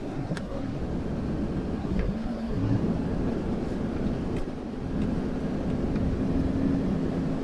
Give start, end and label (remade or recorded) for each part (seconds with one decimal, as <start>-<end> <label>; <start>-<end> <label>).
0.0-0.8 remade; 0.8-1.8 recorded; 1.8-2.8 remade; 2.8-7.4 recorded